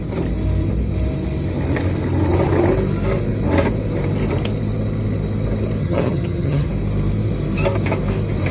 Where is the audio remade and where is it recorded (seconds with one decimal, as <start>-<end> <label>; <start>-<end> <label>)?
0.0-5.8 recorded; 5.8-6.7 remade; 6.7-8.5 recorded

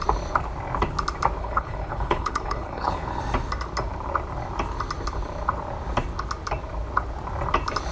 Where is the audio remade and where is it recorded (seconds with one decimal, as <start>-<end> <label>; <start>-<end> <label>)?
0.0-1.4 recorded; 1.4-3.2 remade; 3.2-7.9 recorded